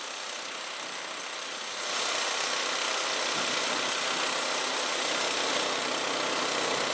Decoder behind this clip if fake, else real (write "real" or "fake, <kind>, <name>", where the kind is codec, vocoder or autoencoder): real